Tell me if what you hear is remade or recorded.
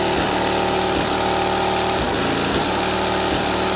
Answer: recorded